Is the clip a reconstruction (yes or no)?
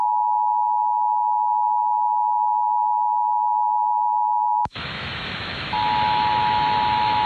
yes